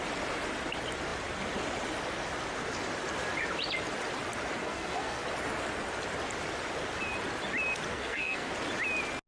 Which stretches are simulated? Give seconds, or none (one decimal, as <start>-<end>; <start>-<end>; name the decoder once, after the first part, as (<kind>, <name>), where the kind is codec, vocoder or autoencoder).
4.6-5.2 (codec, SNAC); 7.9-8.5